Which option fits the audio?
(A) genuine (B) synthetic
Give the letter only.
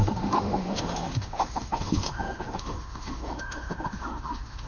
B